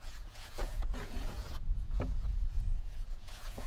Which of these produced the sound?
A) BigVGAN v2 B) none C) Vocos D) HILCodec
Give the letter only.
C